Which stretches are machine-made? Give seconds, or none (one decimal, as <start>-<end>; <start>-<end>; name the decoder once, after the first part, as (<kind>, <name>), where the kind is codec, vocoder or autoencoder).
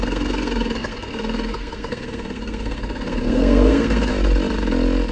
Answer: 0.0-4.1 (codec, SNAC)